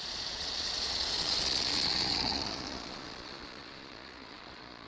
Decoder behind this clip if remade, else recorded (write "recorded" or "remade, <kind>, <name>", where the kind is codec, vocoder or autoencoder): remade, vocoder, Vocos